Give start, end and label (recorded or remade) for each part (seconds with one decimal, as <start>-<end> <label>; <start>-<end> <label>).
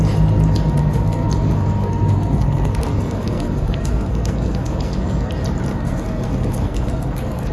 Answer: 0.0-0.8 recorded; 0.8-5.3 remade; 5.3-5.7 recorded; 5.7-7.5 remade